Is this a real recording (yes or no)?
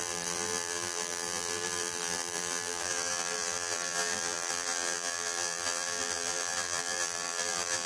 no